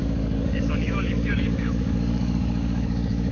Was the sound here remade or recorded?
remade